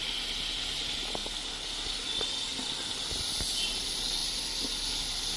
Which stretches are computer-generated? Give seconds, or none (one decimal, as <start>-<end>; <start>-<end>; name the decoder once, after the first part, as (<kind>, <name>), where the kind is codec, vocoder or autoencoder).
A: none